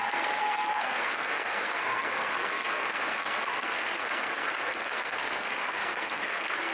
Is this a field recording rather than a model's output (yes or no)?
no